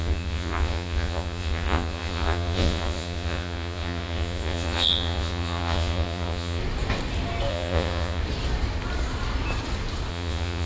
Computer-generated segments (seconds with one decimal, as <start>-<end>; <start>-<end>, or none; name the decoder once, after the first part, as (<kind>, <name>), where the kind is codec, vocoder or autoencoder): 0.0-6.6 (vocoder, Vocos); 7.5-8.2; 10.1-10.7